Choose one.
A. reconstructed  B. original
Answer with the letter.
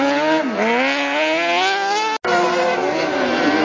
B